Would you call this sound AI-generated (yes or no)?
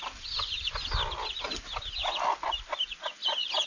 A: no